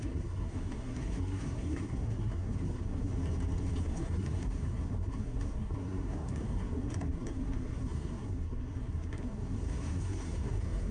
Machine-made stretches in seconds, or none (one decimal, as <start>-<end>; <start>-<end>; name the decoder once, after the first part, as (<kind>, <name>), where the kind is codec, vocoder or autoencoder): 0.0-3.1 (codec, SNAC); 3.8-10.9